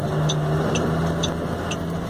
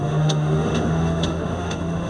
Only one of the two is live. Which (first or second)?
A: first